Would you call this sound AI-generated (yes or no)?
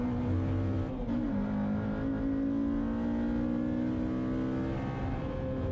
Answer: no